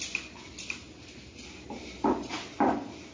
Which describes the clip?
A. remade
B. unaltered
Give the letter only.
B